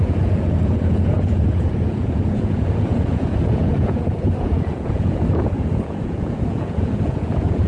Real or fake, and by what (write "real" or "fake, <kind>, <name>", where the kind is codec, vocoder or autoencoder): fake, vocoder, Vocos